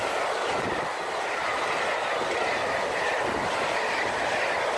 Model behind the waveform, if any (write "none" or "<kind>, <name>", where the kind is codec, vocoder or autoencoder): none